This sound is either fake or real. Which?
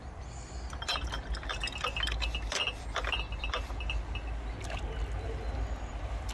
real